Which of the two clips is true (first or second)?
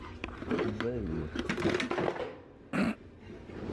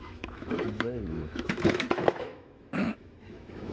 first